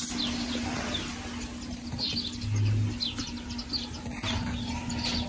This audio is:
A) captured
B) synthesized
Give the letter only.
A